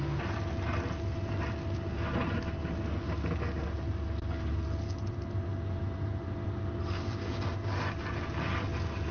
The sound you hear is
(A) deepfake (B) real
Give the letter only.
B